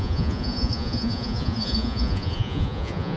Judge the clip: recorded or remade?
remade